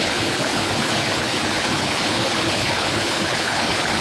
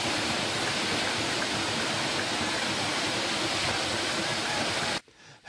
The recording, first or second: second